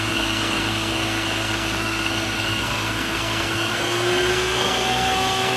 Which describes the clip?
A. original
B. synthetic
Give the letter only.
B